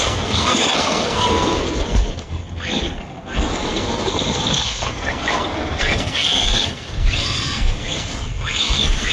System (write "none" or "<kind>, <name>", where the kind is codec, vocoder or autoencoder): codec, SNAC